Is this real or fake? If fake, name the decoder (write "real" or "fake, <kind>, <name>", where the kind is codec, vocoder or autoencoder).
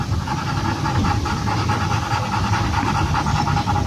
real